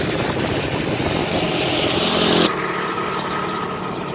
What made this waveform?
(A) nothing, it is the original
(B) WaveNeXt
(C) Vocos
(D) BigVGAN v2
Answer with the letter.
A